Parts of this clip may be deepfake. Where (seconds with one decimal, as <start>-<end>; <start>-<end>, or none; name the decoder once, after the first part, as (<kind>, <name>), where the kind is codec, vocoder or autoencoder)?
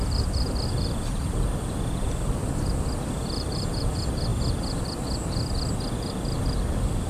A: none